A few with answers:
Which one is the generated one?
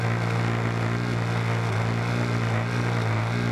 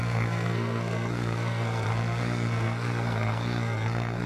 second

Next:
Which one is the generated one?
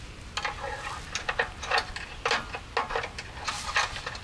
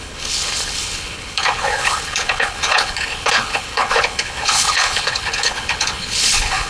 second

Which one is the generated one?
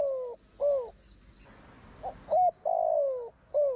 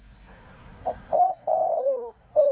second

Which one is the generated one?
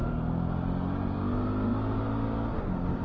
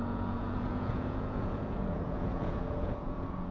second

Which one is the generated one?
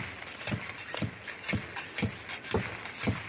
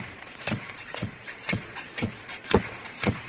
second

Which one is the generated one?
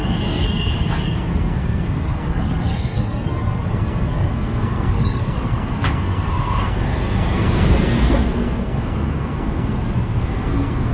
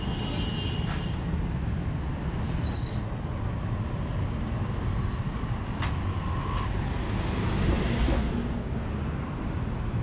first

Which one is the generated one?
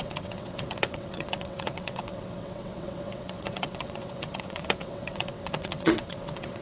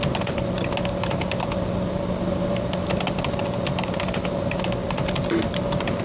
first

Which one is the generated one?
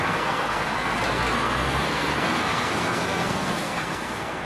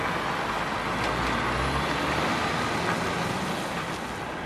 first